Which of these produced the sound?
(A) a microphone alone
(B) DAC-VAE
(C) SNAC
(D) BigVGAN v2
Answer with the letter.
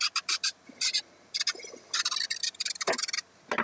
A